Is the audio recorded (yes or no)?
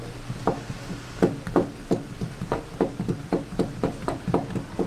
yes